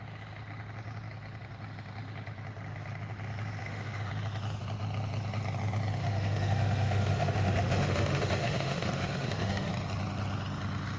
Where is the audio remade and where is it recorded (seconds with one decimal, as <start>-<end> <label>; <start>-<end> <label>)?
0.0-3.6 recorded; 3.6-4.1 remade; 4.1-6.0 recorded; 6.0-9.7 remade; 9.7-11.0 recorded